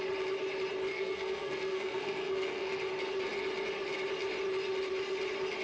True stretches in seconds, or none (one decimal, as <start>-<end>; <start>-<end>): 0.0-0.9; 2.9-5.6